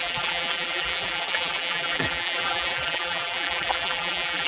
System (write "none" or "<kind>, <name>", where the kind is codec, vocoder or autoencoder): vocoder, BigVGAN v2